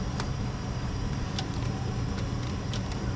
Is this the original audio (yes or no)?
no